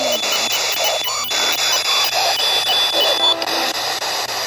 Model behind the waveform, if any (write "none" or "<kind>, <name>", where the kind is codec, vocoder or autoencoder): none